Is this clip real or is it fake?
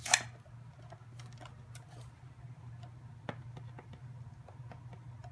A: real